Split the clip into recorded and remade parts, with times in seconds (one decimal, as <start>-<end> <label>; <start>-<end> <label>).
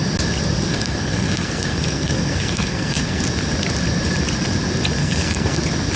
0.0-0.7 recorded; 0.7-3.2 remade; 3.2-5.0 recorded; 5.0-5.6 remade; 5.6-6.0 recorded